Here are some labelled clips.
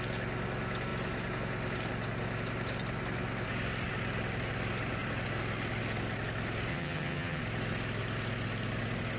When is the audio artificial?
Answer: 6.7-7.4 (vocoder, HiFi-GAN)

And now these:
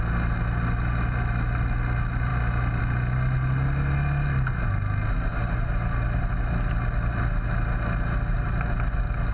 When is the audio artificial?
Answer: none

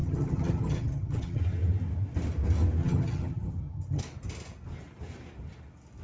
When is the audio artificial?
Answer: 0.0-1.4 (vocoder, HiFi-GAN); 2.8-4.0

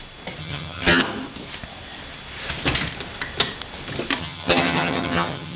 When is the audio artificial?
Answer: 0.4-1.0 (vocoder, HiFi-GAN); 4.2-5.6

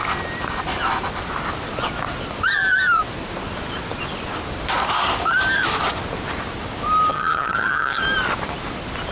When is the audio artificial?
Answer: 7.1-8.0 (vocoder, HiFi-GAN)

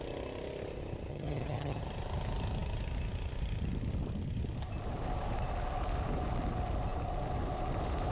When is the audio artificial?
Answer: 1.1-1.8 (vocoder, HiFi-GAN)

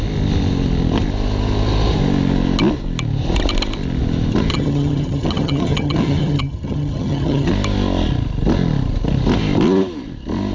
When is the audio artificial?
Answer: 4.5-7.5 (vocoder, HiFi-GAN)

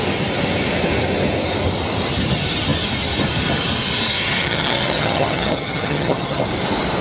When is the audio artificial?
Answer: 4.4-6.4 (vocoder, HiFi-GAN)